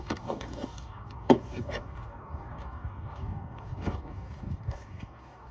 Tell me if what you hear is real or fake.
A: fake